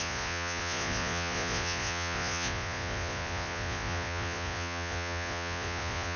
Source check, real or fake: fake